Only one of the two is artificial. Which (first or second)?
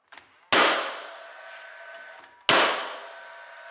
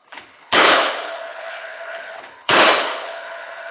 second